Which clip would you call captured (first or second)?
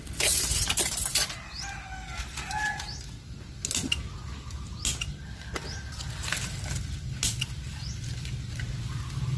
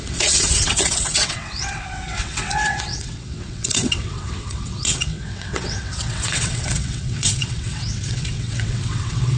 first